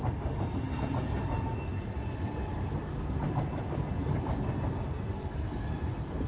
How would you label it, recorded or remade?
recorded